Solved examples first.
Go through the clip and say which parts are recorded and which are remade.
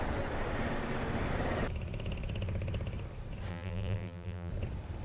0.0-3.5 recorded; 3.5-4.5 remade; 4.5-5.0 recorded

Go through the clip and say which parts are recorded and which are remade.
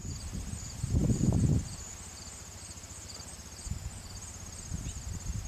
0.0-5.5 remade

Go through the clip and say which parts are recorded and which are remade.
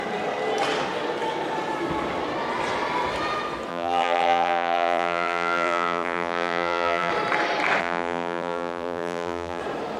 0.0-3.7 recorded; 3.7-7.1 remade; 7.1-7.8 recorded; 7.8-9.6 remade; 9.6-10.0 recorded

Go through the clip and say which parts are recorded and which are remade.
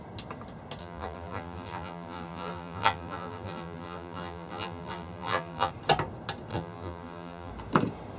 0.0-0.8 recorded; 0.8-5.7 remade; 5.7-6.5 recorded; 6.5-7.5 remade; 7.5-8.2 recorded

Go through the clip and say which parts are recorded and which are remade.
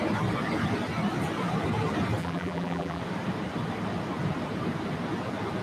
0.0-2.2 recorded; 2.2-3.0 remade; 3.0-5.6 recorded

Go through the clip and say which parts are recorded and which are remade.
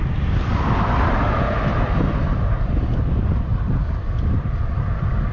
0.0-1.7 recorded; 1.7-5.3 remade